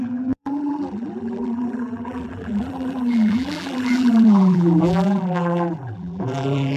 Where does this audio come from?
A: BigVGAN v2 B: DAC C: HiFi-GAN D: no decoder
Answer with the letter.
A